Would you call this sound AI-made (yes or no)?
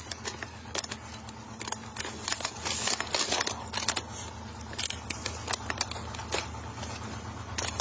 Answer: no